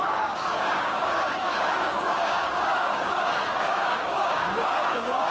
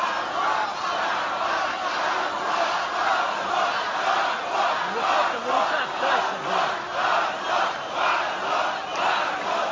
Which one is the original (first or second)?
second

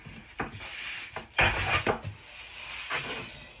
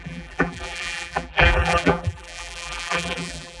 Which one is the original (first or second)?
first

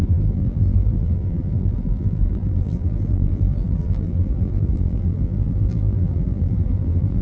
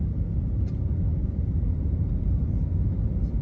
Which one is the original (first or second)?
second